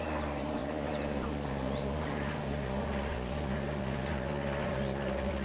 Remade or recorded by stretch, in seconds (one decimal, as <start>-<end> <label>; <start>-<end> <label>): 0.0-5.4 remade